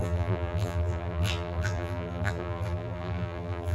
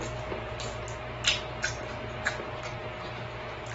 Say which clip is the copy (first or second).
first